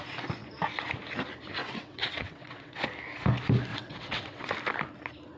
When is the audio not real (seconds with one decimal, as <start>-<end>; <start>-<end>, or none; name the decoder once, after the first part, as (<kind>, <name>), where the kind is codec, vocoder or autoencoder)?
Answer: 1.6-2.8 (vocoder, WaveNeXt); 3.7-4.5

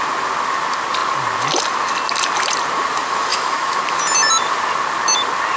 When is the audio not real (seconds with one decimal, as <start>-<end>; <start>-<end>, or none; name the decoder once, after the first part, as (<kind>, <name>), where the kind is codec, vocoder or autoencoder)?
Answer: 3.3-3.8 (autoencoder, DAC-VAE)